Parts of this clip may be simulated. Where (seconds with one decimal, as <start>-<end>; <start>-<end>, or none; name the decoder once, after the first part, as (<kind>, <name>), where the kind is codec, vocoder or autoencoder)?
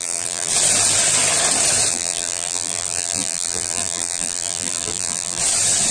0.0-0.5 (vocoder, BigVGAN v2); 1.9-5.4